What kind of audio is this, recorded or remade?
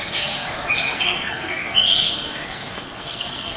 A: remade